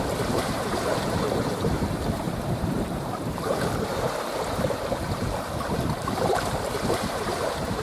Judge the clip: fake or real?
fake